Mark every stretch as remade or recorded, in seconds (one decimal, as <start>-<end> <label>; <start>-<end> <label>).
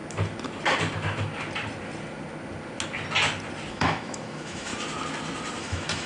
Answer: 0.0-3.7 recorded; 3.7-4.7 remade; 4.7-5.6 recorded; 5.6-6.1 remade